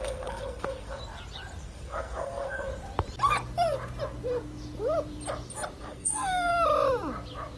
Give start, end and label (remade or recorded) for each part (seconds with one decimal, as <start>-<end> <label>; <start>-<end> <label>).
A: 0.0-1.0 remade; 1.0-1.6 recorded; 1.6-2.7 remade; 2.7-5.8 recorded; 5.8-6.5 remade; 6.5-7.6 recorded